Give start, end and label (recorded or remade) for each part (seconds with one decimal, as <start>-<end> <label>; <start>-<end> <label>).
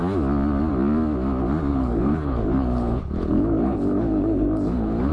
0.0-1.7 recorded; 1.7-5.1 remade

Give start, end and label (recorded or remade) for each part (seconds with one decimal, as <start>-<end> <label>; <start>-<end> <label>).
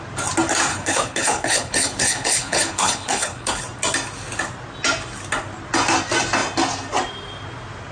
0.0-0.7 recorded; 0.7-3.6 remade; 3.6-7.9 recorded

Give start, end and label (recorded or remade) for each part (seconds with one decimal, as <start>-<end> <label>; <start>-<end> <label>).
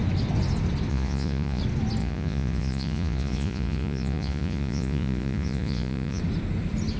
0.0-0.9 recorded; 0.9-1.6 remade; 1.6-2.0 recorded; 2.0-6.2 remade; 6.2-7.0 recorded